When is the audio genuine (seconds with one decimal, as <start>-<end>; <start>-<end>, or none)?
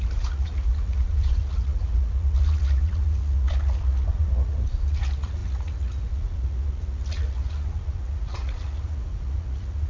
none